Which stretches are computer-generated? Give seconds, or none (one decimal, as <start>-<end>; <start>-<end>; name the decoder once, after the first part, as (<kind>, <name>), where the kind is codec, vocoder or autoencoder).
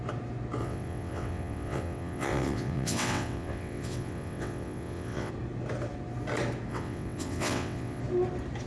0.6-5.3 (vocoder, WaveNeXt); 6.7-8.0